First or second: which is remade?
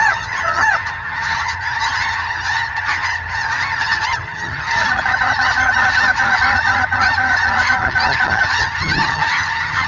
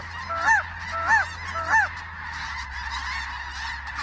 first